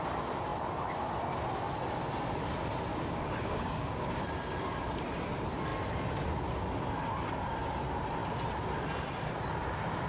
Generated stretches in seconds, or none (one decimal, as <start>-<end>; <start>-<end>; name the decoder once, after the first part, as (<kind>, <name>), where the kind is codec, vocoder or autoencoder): 2.9-4.2 (codec, DAC)